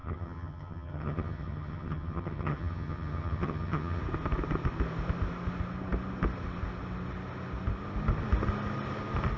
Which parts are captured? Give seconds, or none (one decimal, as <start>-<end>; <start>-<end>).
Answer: 4.0-9.4